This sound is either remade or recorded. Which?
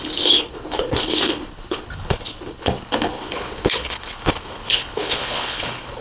remade